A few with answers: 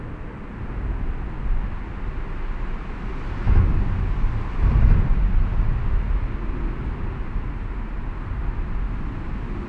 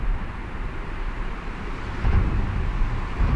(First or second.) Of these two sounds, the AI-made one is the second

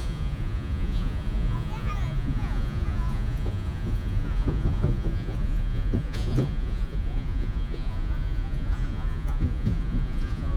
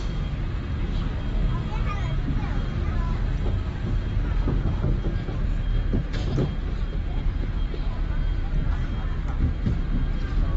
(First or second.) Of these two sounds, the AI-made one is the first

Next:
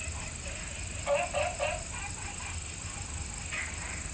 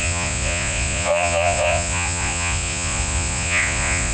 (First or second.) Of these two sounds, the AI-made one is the second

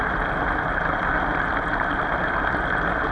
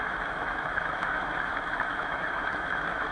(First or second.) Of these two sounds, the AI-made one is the second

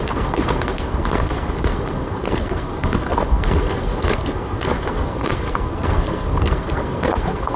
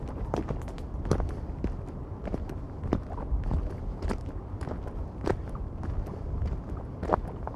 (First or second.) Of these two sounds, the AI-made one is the first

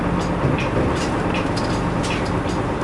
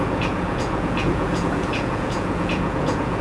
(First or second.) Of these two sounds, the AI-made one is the second